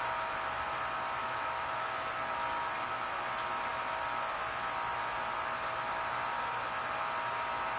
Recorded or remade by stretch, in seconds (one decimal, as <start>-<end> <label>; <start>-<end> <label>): 0.0-1.2 recorded; 1.2-1.8 remade; 1.8-7.8 recorded